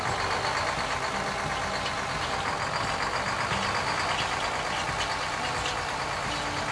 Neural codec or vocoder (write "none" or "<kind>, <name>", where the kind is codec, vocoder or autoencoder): none